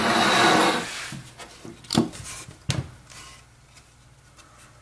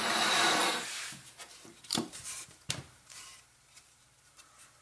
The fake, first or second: second